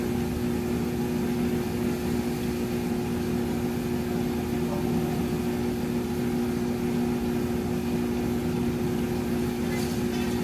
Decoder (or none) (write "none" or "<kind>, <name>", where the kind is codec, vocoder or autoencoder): none